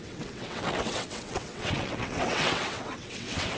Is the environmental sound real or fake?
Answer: fake